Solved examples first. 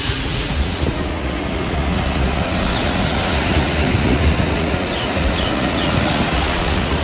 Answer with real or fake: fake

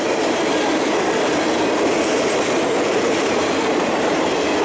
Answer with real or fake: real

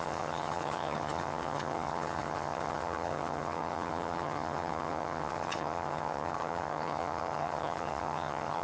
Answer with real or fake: fake